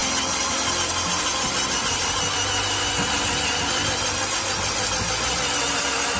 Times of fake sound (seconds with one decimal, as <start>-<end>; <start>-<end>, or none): none